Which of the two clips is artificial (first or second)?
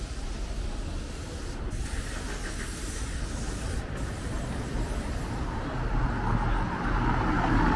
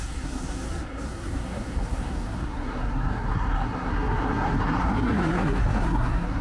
second